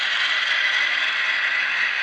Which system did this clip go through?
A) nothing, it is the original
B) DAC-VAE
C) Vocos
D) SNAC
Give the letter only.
A